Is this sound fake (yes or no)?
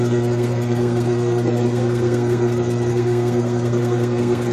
yes